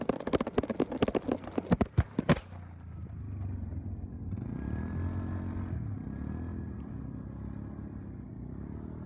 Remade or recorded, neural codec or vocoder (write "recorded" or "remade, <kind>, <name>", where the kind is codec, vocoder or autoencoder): recorded